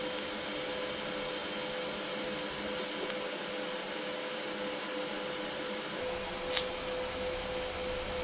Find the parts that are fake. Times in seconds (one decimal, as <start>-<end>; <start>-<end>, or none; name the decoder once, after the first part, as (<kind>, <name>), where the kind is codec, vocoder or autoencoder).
none